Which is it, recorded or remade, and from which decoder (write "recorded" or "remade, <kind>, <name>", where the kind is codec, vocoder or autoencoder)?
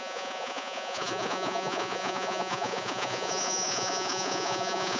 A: remade, vocoder, Vocos